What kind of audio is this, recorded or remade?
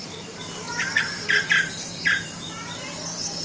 remade